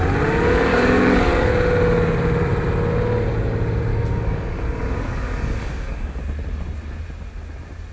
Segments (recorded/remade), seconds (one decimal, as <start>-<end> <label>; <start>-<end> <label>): 0.0-0.7 recorded; 0.7-1.5 remade; 1.5-3.9 recorded; 3.9-6.2 remade; 6.2-7.9 recorded